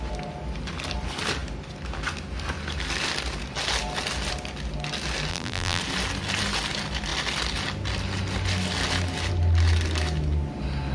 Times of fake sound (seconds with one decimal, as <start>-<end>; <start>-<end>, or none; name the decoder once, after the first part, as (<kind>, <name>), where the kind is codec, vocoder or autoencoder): 5.3-5.8 (vocoder, BigVGAN v2)